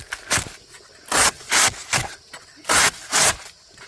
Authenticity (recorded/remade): recorded